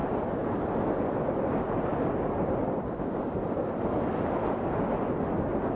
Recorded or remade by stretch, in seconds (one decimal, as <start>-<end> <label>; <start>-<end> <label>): 0.0-5.8 recorded